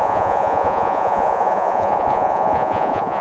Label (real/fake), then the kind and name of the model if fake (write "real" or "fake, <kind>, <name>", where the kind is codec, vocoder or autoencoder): fake, vocoder, Vocos